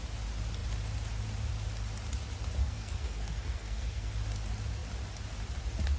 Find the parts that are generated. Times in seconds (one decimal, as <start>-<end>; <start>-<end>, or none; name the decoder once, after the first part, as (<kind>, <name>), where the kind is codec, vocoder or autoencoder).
2.6-4.1 (codec, SNAC)